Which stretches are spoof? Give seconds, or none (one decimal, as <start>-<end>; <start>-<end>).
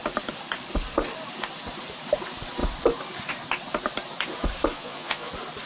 4.7-5.3